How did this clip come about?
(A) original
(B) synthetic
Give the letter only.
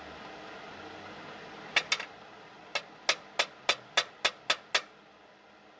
A